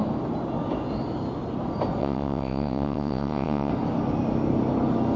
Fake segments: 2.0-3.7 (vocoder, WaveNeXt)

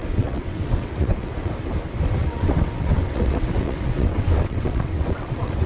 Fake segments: 0.0-1.5 (vocoder, WaveNeXt); 2.2-5.7

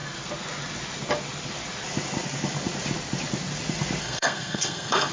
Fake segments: 4.0-5.1 (codec, SNAC)

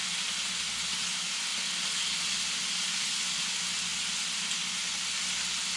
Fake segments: 0.0-0.5 (vocoder, BigVGAN v2)

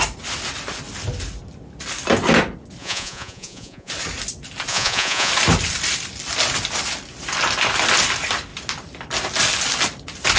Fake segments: 2.8-3.9 (vocoder, Vocos); 4.7-5.3

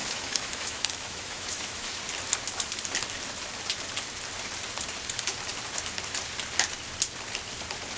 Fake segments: 0.0-1.9 (autoencoder, DAC-VAE)

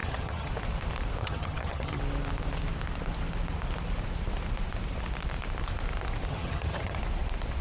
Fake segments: 0.0-0.5 (vocoder, HiFi-GAN); 1.2-2.0; 6.3-7.0

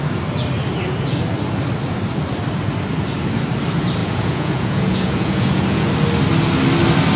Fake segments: 4.0-5.9 (vocoder, Vocos)